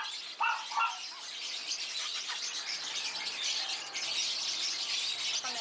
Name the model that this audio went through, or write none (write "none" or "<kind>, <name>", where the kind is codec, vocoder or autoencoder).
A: none